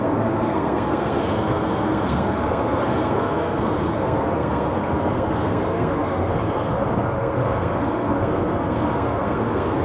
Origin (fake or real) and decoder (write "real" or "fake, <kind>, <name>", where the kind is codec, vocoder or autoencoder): fake, codec, SNAC